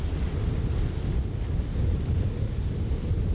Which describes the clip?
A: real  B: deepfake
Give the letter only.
A